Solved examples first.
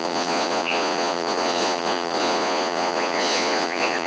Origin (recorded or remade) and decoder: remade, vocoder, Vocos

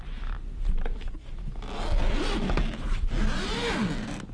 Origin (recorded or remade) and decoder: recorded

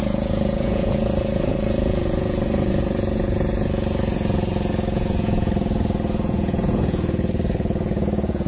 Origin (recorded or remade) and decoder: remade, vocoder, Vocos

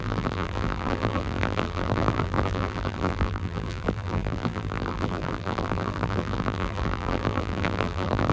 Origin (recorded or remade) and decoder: remade, vocoder, BigVGAN v2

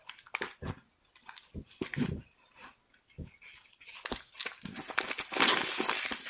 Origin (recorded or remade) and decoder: recorded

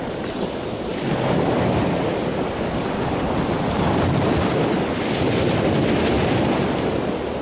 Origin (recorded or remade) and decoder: recorded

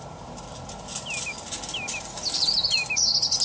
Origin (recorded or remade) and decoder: recorded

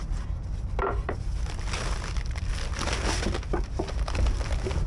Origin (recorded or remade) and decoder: recorded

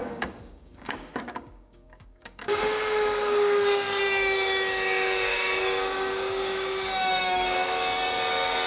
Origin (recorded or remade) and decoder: remade, codec, DAC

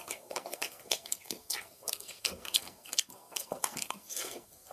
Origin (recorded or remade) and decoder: remade, codec, SNAC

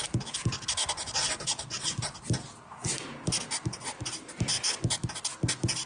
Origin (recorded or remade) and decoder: recorded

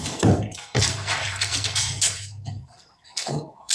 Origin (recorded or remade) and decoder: remade, codec, SNAC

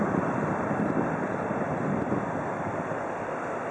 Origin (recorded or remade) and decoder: recorded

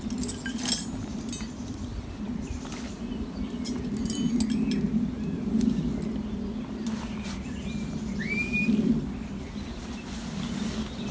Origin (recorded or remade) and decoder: recorded